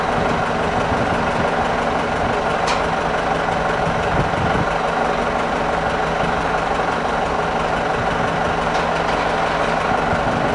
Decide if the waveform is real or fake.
real